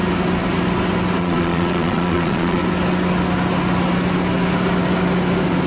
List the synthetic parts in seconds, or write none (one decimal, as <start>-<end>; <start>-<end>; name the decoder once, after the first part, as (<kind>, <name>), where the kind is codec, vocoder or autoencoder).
1.2-2.6 (vocoder, Vocos)